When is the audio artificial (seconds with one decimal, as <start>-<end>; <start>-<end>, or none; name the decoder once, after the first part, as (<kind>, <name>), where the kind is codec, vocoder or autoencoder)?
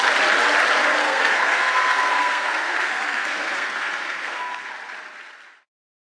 1.0-4.7 (codec, SNAC)